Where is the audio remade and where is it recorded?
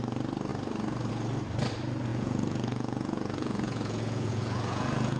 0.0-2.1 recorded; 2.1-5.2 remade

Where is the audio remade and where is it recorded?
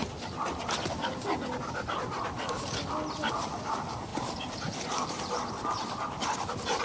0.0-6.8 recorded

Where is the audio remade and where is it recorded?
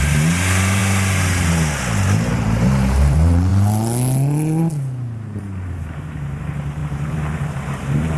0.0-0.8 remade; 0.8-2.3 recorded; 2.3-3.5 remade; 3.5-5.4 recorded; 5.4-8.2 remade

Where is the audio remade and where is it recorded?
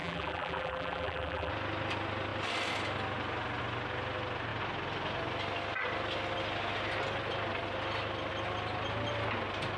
0.0-1.5 remade; 1.5-9.8 recorded